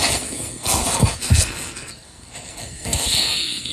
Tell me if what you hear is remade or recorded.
remade